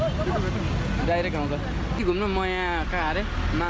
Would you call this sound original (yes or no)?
yes